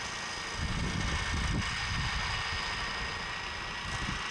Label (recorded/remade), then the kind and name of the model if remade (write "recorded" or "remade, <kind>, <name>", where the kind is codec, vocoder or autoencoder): recorded